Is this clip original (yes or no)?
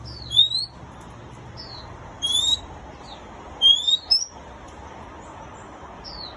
yes